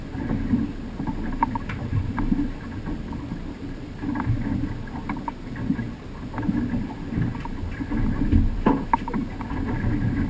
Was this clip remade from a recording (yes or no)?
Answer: no